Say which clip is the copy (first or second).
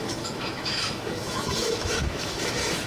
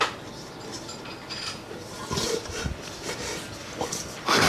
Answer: first